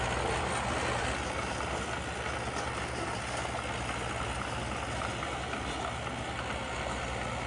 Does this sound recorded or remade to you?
recorded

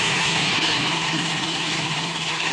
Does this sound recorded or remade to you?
remade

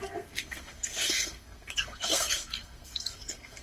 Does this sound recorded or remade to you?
remade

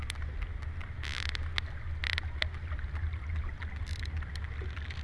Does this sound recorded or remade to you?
recorded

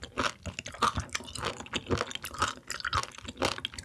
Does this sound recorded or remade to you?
recorded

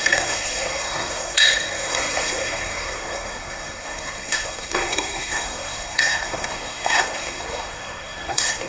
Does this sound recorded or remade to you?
remade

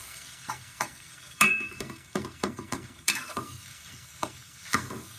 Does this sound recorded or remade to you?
remade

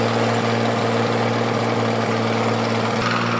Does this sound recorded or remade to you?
recorded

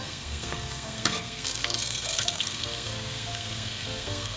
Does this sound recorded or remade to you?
remade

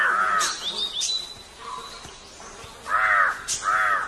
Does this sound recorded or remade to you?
recorded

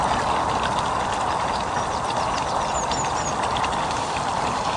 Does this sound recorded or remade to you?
recorded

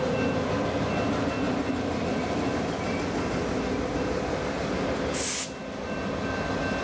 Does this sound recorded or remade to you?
recorded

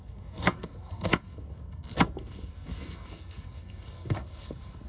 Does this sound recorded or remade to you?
remade